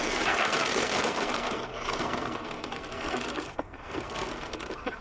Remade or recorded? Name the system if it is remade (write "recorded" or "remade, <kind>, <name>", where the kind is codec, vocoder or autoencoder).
remade, codec, SNAC